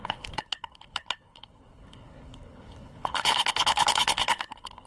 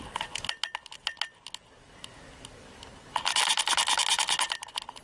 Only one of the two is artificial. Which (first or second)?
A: first